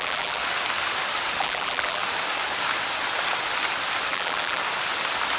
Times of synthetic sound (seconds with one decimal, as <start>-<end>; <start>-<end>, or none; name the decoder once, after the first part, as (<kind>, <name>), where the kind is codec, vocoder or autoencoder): 0.0-0.4 (vocoder, BigVGAN v2); 1.4-2.0; 4.1-4.6